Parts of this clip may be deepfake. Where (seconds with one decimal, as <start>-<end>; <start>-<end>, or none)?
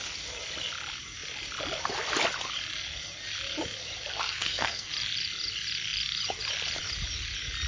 4.1-4.9